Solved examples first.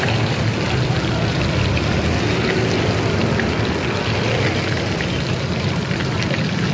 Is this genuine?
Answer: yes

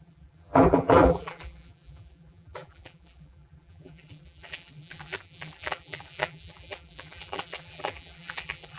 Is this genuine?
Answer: no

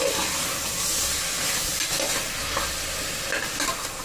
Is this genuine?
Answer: yes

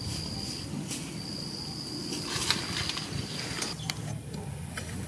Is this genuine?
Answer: yes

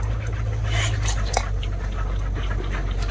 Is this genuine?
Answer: yes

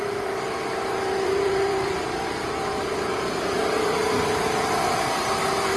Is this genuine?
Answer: no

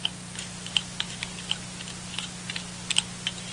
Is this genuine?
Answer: yes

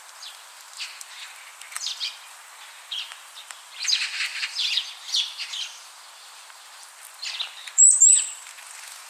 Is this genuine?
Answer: no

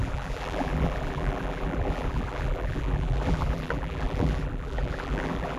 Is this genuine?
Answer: no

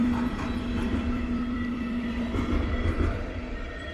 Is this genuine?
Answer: no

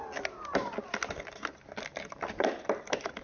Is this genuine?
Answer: yes